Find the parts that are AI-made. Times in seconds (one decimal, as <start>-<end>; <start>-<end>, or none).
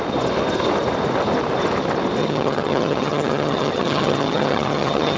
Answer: 2.2-5.2